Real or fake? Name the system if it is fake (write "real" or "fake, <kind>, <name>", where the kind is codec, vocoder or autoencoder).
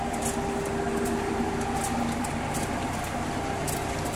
real